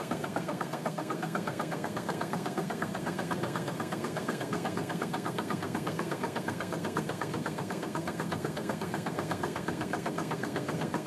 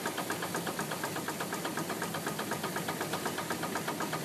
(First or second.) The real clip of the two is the second